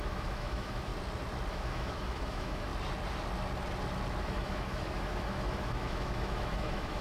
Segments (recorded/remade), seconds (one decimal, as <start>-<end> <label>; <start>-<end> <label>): 0.0-0.9 remade; 0.9-1.5 recorded; 1.5-2.7 remade; 2.7-4.2 recorded; 4.2-7.0 remade